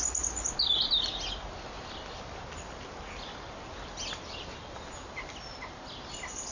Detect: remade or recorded recorded